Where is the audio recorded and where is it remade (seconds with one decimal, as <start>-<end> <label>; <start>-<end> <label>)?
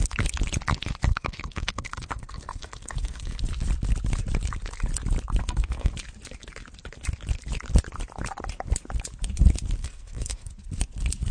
0.0-1.1 recorded; 1.1-3.4 remade; 3.4-5.4 recorded; 5.4-5.9 remade; 5.9-9.8 recorded; 9.8-10.5 remade; 10.5-11.3 recorded